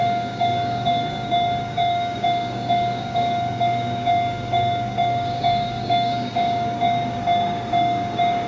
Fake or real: fake